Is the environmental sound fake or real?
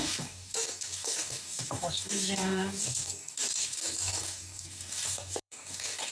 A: fake